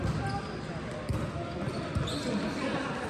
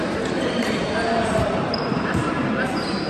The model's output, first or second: second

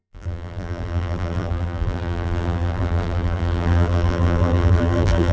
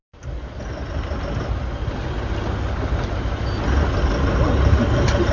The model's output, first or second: first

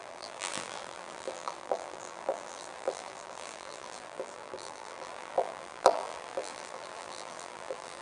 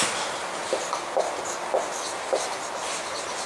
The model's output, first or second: first